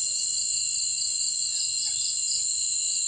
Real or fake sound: fake